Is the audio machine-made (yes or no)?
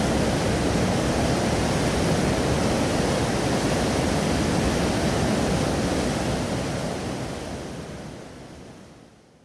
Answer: no